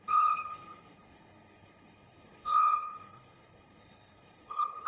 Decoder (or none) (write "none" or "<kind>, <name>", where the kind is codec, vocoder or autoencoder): codec, HILCodec